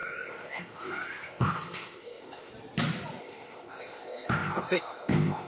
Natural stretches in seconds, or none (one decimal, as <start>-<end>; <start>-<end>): 2.5-3.2